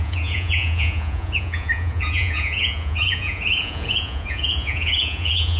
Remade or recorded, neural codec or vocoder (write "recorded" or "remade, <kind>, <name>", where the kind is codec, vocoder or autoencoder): remade, vocoder, Vocos